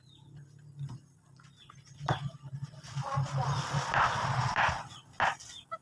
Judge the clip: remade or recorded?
recorded